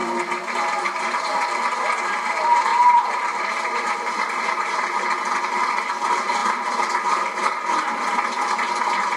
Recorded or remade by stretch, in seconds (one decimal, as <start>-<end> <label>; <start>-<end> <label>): 0.0-1.5 remade; 1.5-2.7 recorded; 2.7-5.0 remade; 5.0-6.4 recorded; 6.4-6.9 remade; 6.9-9.2 recorded